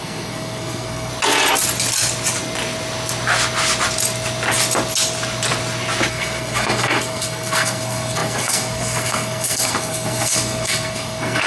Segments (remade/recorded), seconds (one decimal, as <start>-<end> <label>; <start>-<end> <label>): 0.0-1.1 remade; 1.1-6.1 recorded; 6.1-11.5 remade